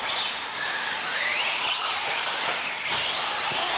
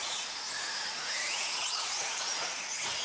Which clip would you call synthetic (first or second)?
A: second